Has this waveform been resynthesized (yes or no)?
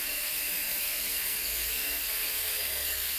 yes